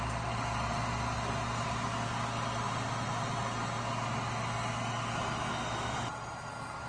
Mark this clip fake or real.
real